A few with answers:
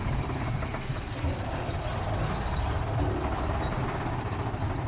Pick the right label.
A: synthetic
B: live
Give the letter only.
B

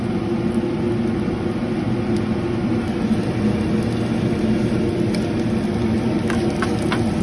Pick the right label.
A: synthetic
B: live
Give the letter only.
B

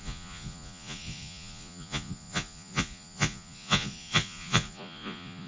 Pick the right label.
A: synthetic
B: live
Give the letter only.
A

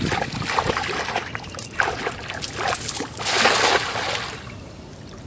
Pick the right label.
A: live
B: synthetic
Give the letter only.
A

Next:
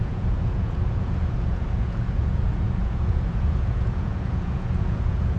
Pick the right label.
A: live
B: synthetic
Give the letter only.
B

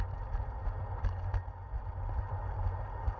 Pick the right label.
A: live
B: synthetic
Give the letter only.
A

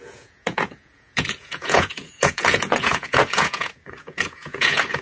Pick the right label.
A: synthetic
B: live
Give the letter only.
A